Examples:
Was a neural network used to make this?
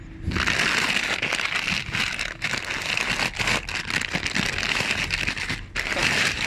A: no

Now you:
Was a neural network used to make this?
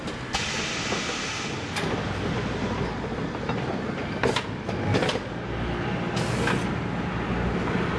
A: no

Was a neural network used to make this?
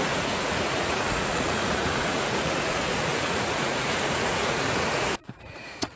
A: yes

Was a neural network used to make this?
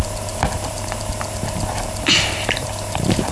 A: yes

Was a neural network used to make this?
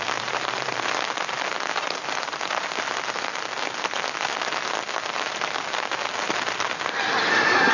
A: no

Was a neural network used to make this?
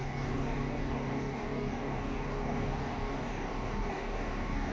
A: yes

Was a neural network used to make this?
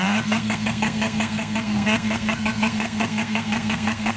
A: yes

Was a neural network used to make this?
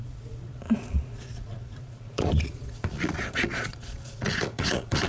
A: yes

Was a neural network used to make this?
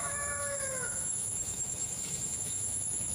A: yes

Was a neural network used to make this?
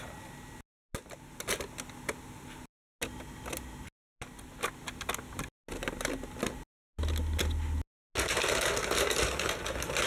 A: no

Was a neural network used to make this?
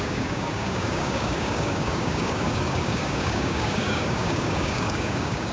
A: yes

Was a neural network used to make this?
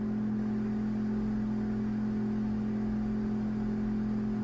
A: no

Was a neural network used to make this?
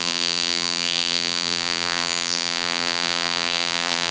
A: yes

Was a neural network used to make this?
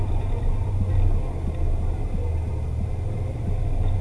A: no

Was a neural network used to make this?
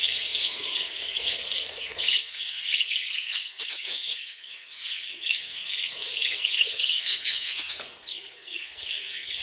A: yes